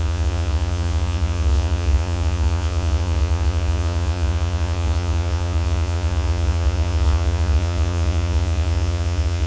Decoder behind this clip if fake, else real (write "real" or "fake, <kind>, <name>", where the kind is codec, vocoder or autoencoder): fake, vocoder, Vocos